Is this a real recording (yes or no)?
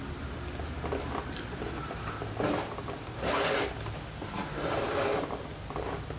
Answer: yes